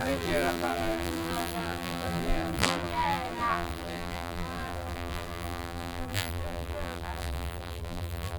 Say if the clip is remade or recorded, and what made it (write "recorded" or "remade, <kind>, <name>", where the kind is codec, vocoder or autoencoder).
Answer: remade, vocoder, BigVGAN v2